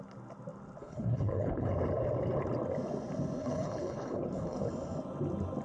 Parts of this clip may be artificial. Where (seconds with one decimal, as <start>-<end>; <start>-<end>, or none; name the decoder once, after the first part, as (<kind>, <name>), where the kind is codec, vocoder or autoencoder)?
0.8-1.7 (codec, HILCodec); 3.4-4.7